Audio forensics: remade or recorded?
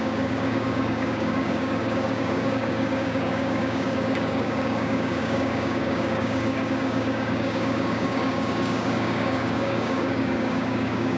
remade